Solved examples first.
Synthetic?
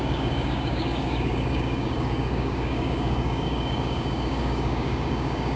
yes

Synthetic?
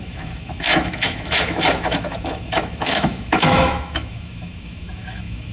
yes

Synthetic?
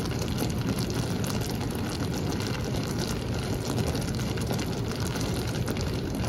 yes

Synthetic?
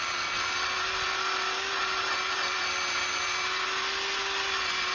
no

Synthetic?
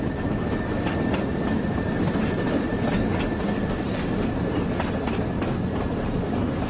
no